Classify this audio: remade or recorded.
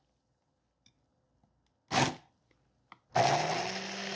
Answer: recorded